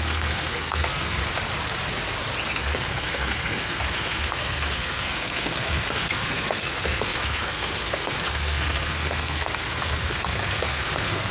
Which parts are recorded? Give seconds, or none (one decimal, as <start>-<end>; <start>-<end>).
1.2-2.5

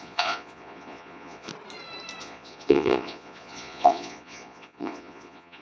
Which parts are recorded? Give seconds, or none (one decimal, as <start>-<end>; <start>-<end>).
1.5-2.2

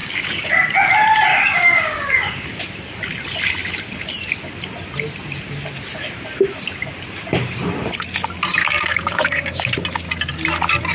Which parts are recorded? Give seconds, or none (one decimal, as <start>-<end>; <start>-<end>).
0.5-1.3; 2.6-8.6; 9.7-10.9

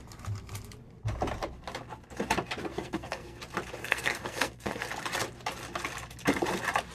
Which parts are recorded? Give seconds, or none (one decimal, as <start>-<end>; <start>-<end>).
0.0-2.7; 3.4-3.8; 4.9-6.9